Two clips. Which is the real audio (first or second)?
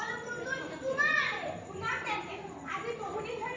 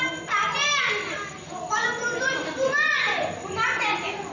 second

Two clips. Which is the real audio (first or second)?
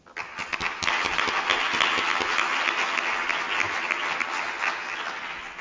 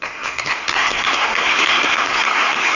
first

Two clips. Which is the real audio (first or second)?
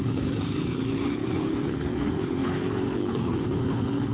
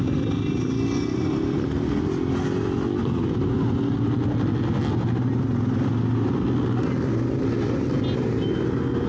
second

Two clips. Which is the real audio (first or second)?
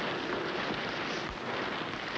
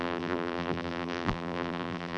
first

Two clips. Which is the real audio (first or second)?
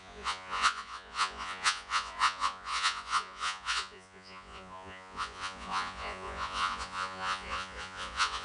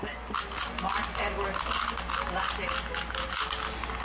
second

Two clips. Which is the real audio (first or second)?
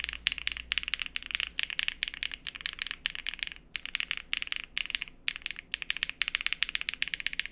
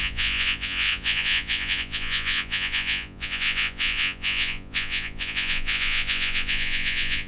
first